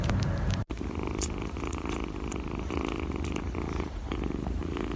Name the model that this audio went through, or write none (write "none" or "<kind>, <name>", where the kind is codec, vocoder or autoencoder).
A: vocoder, BigVGAN v2